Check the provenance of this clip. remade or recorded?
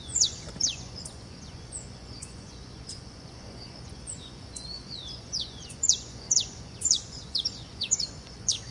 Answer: remade